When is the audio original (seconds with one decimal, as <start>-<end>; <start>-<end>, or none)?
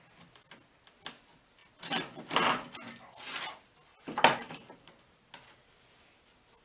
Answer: 0.0-6.6